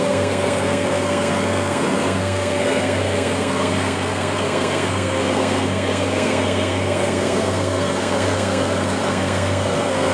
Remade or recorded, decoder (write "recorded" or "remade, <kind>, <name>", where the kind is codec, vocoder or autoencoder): remade, codec, SNAC